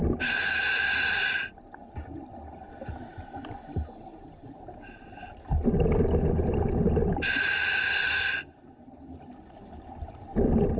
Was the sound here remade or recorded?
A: recorded